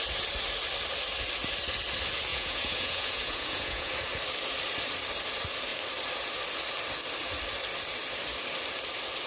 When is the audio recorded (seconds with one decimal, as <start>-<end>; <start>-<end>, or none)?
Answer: 0.0-2.3; 3.9-9.3